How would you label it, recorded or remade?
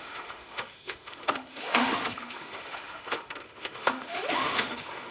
remade